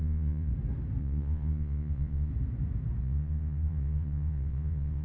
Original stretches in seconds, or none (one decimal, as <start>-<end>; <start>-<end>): 0.5-1.0; 2.3-3.0